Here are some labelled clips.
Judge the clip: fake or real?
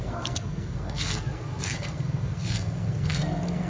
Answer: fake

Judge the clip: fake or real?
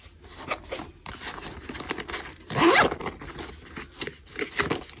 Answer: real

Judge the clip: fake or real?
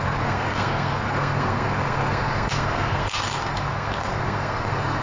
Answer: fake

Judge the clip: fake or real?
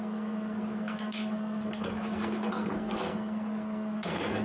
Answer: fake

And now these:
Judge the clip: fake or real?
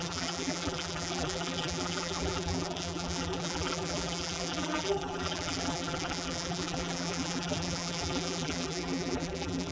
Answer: fake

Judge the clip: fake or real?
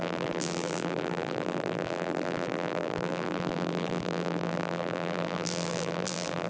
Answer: fake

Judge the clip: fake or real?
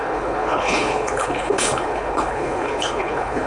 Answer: fake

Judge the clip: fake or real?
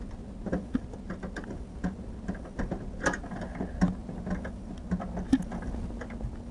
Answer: real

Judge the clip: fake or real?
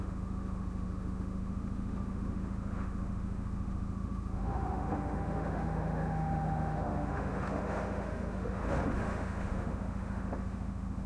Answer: fake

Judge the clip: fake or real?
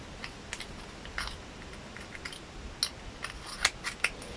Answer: real